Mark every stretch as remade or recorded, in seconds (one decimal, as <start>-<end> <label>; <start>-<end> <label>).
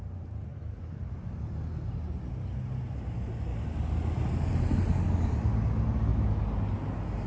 0.0-7.3 recorded